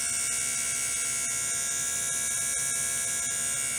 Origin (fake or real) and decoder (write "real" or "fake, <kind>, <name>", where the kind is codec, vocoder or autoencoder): real